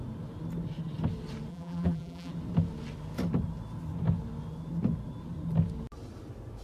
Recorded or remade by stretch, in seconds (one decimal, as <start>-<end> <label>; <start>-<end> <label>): 0.0-1.5 recorded; 1.5-2.3 remade; 2.3-6.6 recorded